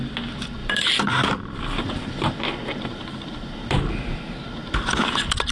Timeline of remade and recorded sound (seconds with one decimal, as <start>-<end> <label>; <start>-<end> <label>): 0.0-0.6 recorded; 0.6-3.9 remade; 3.9-5.5 recorded